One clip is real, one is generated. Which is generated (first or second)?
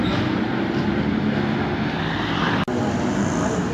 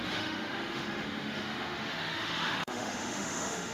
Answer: second